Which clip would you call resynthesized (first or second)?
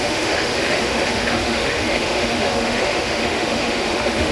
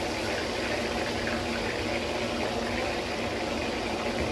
first